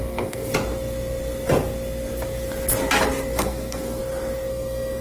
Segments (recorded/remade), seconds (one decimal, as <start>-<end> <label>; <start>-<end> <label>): 0.0-0.5 remade; 0.5-3.4 recorded; 3.4-4.0 remade; 4.0-4.5 recorded; 4.5-5.0 remade